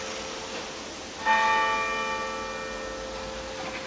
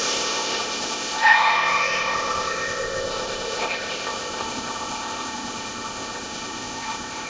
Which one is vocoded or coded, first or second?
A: second